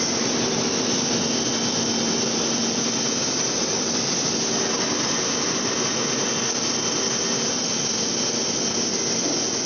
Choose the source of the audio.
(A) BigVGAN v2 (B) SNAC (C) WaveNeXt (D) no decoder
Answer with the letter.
D